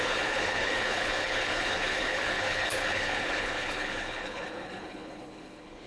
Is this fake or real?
fake